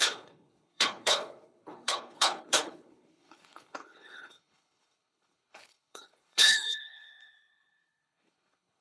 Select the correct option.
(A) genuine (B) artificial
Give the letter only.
B